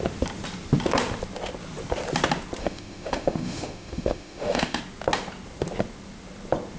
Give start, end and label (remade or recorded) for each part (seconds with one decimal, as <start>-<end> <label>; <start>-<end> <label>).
0.0-2.6 recorded; 2.6-4.8 remade; 4.8-6.8 recorded